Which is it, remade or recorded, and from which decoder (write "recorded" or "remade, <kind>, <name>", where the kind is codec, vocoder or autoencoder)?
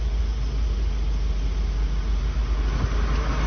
recorded